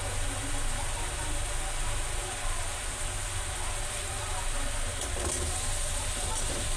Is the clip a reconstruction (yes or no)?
no